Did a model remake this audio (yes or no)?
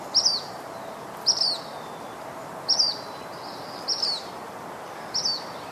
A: no